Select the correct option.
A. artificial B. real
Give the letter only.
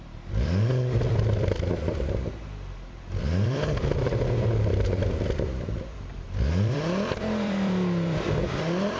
A